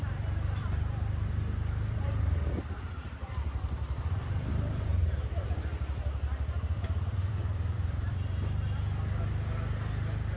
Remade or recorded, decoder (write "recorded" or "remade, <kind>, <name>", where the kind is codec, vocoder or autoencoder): remade, vocoder, BigVGAN v2